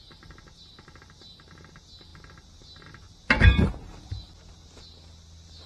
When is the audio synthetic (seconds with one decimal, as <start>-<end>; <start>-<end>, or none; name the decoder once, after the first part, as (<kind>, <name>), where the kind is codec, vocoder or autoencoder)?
none